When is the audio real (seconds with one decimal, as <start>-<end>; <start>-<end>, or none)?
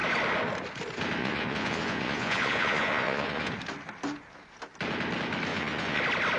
0.0-1.2; 3.5-5.5; 6.0-6.4